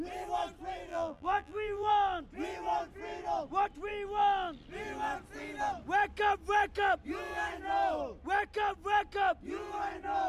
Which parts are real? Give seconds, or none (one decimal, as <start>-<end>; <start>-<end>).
0.0-0.9; 1.9-10.3